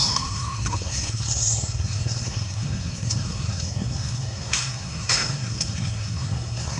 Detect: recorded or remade remade